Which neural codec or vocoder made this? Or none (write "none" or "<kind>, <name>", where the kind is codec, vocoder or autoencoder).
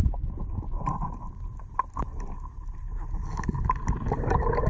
none